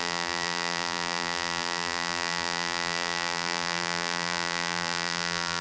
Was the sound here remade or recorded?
remade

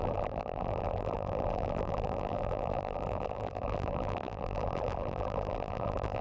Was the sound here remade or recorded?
remade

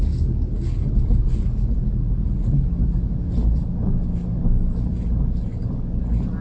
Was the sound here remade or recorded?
recorded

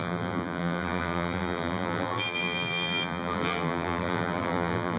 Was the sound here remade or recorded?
remade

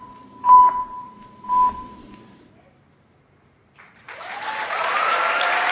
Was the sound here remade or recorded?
remade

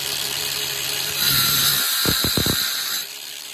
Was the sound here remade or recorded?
remade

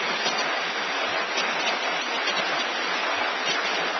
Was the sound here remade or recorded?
recorded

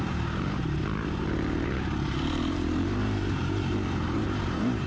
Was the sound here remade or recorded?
remade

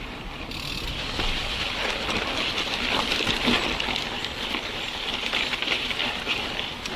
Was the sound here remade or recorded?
recorded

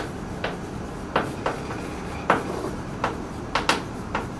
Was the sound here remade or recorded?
recorded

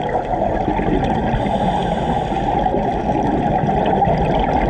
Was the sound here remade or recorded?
recorded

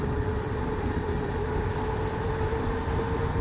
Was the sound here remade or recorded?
remade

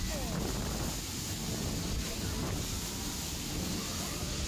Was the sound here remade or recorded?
recorded